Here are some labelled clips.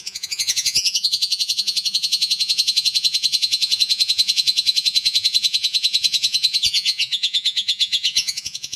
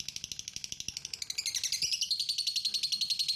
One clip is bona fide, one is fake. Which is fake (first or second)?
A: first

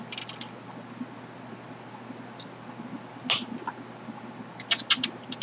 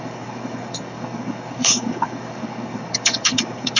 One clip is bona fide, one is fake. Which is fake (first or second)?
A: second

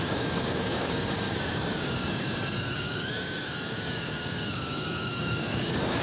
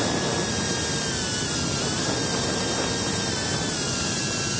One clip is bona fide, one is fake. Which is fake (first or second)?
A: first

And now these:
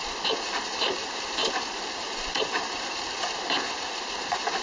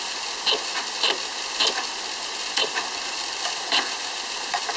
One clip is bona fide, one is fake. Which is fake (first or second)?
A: first